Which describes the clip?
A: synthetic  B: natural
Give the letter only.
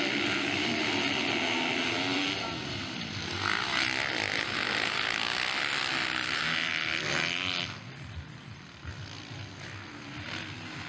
B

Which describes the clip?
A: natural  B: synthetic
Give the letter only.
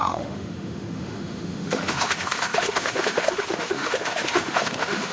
B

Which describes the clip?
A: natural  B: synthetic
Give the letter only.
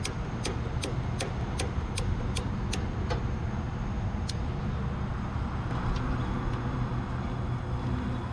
A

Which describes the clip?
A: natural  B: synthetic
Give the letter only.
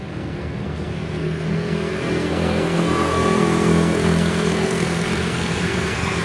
B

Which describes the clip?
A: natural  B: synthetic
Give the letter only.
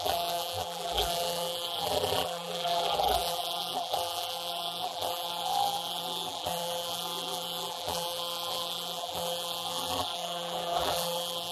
B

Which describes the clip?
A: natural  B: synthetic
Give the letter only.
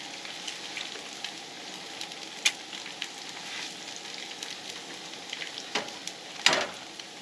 A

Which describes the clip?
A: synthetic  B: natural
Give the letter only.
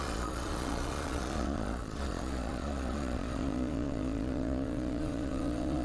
A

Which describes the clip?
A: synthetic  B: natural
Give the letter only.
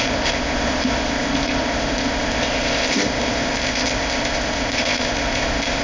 A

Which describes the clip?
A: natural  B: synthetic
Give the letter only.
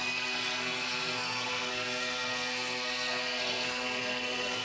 B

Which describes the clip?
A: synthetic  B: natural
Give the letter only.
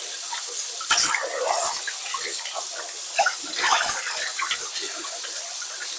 B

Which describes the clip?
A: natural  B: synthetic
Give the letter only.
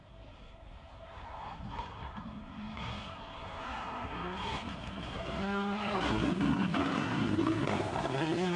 B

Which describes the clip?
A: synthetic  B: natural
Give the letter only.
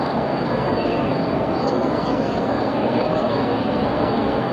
A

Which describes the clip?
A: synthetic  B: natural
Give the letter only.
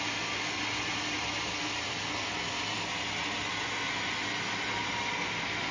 B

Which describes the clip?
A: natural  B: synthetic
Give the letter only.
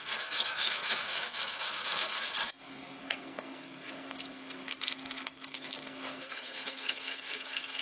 B